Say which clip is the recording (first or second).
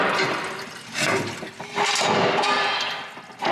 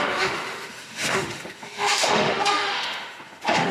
first